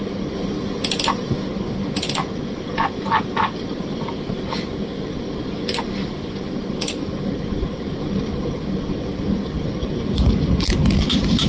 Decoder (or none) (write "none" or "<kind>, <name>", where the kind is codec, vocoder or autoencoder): none